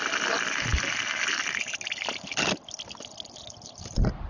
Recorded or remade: recorded